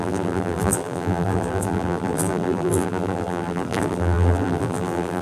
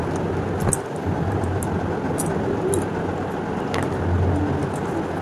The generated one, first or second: first